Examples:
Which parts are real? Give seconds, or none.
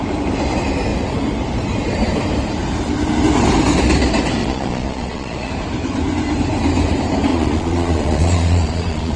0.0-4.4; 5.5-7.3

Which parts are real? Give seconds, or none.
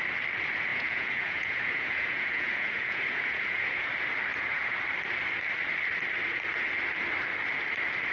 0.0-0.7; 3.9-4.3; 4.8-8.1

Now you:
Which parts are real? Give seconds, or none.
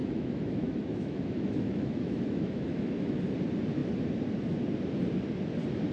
3.2-5.9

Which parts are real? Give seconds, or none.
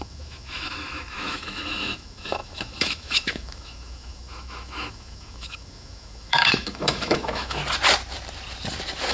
7.6-9.1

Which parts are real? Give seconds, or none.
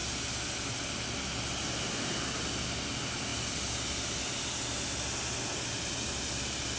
0.0-6.8